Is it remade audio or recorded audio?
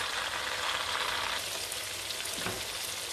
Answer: recorded